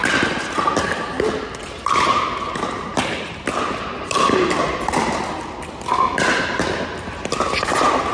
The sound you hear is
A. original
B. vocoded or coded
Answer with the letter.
A